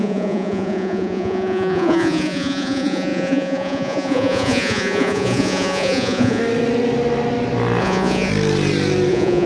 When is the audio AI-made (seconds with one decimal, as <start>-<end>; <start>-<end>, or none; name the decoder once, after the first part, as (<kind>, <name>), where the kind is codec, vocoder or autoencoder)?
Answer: 0.0-6.4 (vocoder, Vocos); 7.8-8.3; 9.1-9.5